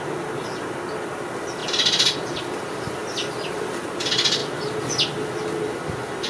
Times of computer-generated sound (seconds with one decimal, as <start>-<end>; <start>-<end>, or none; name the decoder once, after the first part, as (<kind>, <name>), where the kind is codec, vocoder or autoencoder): 1.6-3.7 (vocoder, BigVGAN v2)